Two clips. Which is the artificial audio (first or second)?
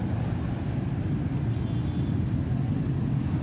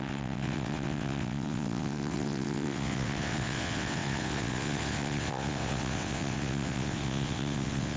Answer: second